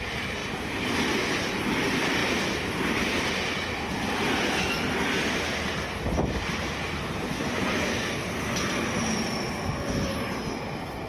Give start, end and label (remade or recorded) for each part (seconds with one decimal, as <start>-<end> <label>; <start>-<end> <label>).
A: 0.0-0.4 recorded; 0.4-1.6 remade; 1.6-2.2 recorded; 2.2-3.2 remade; 3.2-11.1 recorded